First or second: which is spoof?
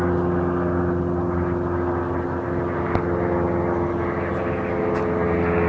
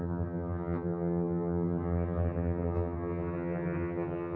second